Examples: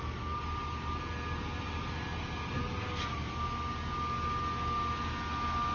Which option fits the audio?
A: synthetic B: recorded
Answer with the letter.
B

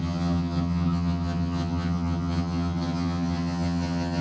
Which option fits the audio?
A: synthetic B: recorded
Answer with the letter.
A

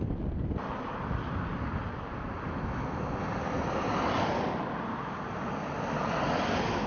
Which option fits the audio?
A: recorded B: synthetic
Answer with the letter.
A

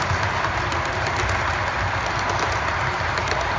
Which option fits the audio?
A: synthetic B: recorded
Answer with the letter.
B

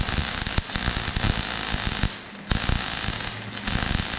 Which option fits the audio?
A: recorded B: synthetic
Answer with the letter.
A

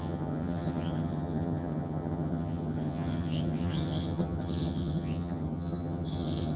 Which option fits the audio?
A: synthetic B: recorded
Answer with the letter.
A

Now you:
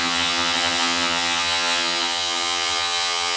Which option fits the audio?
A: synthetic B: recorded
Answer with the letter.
A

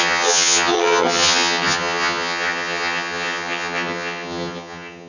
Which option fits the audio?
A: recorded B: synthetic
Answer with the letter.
B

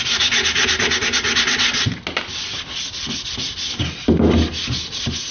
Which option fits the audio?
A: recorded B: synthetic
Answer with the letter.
A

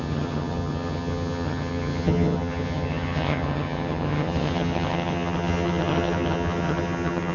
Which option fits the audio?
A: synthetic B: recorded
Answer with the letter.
A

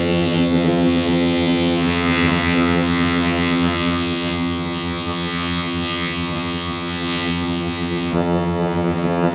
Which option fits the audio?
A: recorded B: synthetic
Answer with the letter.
B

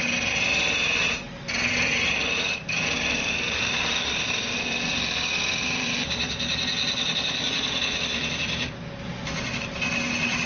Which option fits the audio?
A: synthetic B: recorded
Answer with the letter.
B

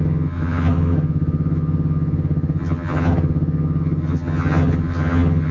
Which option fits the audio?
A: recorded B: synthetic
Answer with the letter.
B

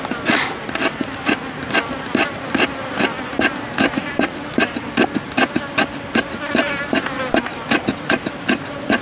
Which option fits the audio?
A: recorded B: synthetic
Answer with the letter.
A